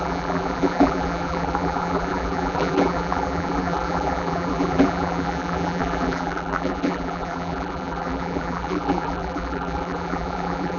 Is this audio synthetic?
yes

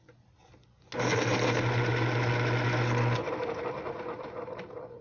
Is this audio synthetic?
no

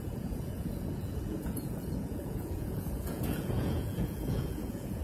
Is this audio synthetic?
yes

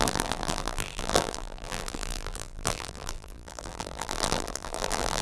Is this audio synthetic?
yes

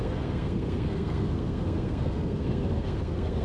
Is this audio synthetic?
yes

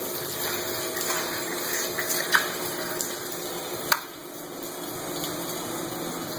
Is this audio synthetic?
no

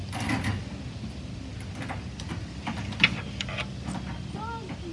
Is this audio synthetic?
no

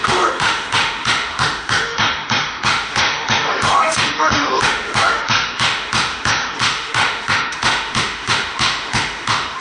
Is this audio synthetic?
yes